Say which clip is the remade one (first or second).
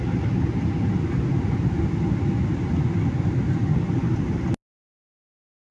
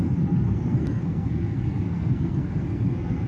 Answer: second